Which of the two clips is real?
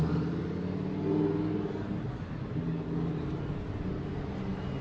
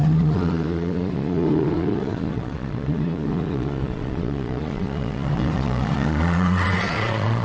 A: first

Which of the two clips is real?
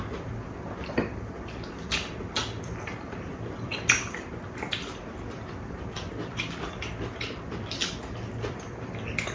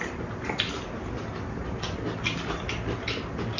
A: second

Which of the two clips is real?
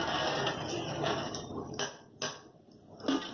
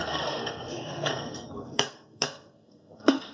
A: first